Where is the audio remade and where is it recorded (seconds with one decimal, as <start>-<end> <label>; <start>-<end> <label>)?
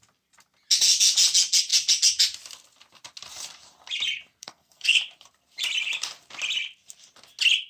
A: 0.0-4.4 recorded; 4.4-5.0 remade; 5.0-7.7 recorded